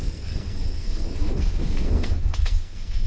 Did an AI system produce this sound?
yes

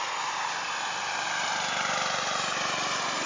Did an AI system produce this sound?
no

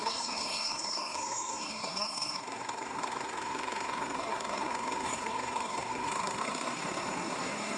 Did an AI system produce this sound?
yes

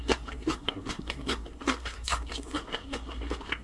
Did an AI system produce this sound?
yes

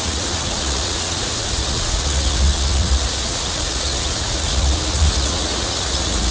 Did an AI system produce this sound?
yes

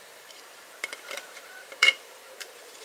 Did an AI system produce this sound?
yes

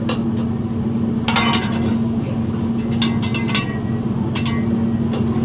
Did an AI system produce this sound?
no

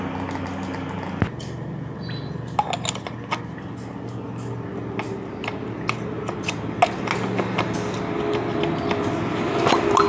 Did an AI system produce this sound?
no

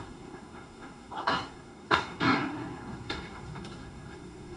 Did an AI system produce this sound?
yes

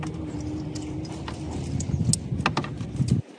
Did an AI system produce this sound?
no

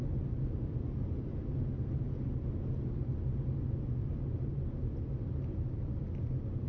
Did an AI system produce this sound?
no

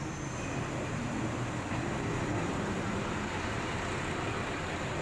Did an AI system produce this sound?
no